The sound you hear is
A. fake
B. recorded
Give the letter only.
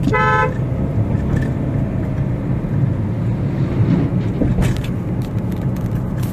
B